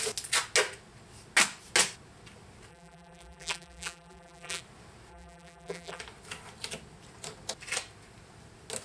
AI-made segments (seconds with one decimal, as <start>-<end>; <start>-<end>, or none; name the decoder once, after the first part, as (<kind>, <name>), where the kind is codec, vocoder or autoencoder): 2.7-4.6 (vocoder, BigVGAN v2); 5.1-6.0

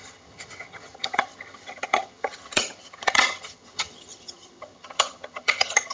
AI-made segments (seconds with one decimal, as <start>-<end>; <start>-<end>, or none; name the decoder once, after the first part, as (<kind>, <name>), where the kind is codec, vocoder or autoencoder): 0.0-5.9 (vocoder, HiFi-GAN)

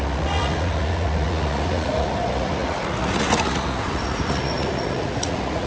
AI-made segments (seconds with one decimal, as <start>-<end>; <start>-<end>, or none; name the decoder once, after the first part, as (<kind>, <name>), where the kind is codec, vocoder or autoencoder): 0.0-5.7 (vocoder, Vocos)

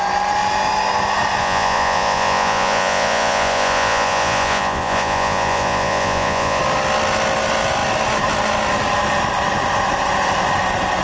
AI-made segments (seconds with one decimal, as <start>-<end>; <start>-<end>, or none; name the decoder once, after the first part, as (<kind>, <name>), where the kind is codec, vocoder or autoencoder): 1.4-6.6 (vocoder, Vocos)